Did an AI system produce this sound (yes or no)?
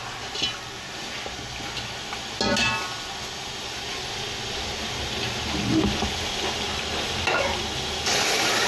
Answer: no